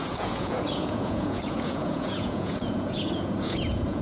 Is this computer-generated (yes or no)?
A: yes